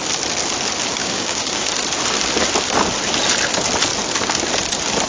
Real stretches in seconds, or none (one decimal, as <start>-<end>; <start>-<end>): 0.0-1.0; 1.7-5.1